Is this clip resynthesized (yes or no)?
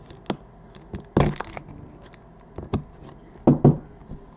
no